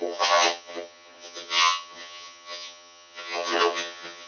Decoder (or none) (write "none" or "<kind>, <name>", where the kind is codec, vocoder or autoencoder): vocoder, HiFi-GAN